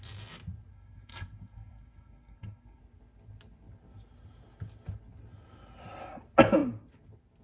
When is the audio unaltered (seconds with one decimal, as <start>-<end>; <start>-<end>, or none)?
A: 0.0-0.7; 2.8-7.4

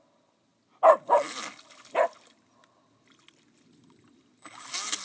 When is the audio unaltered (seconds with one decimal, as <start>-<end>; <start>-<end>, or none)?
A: 0.0-5.0